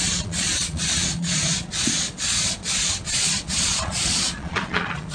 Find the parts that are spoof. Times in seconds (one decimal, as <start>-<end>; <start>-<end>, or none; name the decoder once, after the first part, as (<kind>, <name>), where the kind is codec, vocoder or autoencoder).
0.0-5.1 (vocoder, Vocos)